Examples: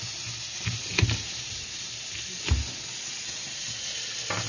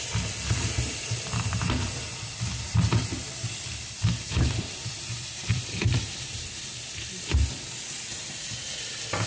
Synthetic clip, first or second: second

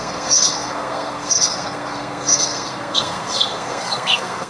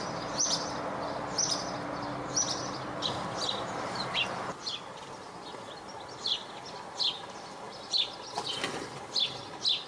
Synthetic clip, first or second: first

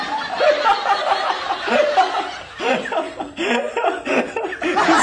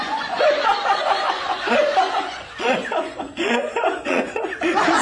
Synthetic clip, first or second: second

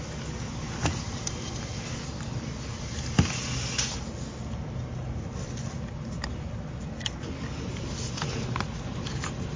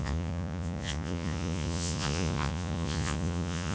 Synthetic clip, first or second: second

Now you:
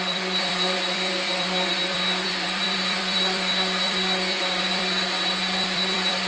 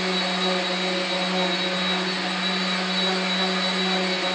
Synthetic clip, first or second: first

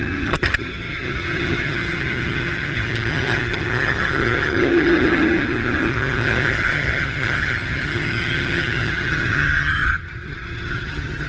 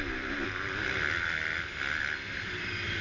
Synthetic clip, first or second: first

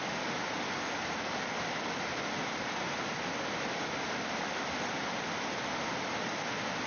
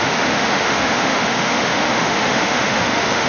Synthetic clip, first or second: second